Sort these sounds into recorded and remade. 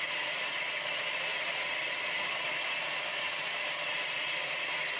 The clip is recorded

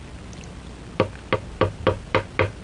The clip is recorded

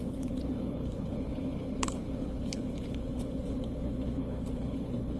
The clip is remade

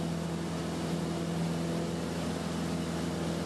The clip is recorded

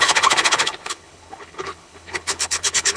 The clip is remade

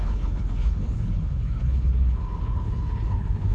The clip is remade